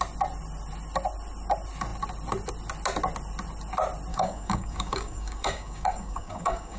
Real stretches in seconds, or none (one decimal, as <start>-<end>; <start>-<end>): 0.0-4.1